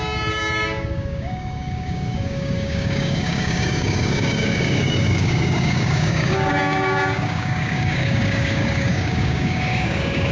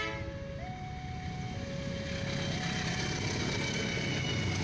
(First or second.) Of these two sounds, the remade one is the first